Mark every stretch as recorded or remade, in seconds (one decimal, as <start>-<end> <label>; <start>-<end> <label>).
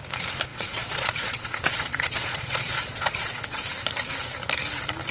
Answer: 0.0-0.5 recorded; 0.5-3.6 remade; 3.6-5.1 recorded